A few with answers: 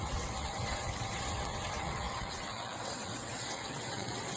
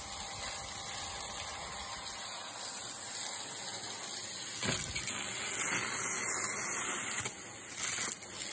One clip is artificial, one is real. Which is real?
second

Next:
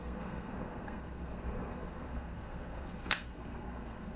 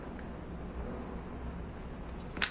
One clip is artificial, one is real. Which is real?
second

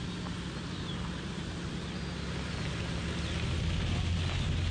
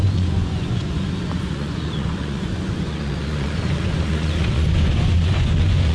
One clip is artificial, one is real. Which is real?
first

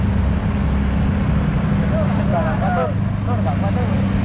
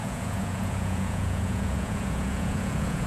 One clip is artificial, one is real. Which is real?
first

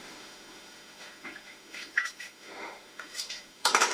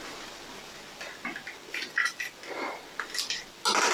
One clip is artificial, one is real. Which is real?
second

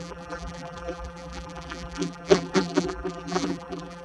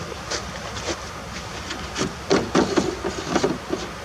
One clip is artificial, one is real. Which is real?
second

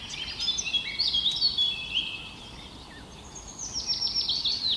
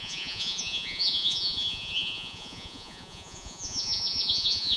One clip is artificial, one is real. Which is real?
first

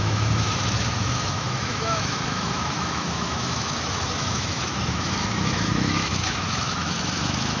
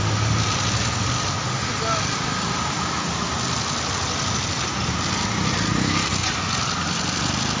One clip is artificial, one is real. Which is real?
second